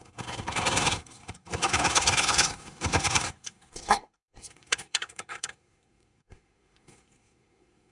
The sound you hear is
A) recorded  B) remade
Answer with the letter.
B